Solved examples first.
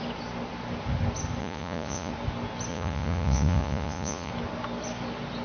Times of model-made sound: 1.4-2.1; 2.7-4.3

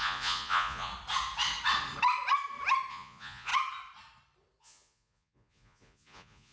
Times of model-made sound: 0.0-0.9; 2.9-3.5; 4.6-6.5

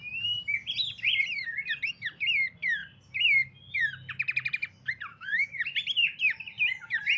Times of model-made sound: 5.1-5.6

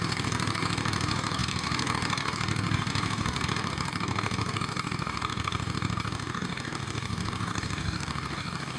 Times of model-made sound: 0.0-8.8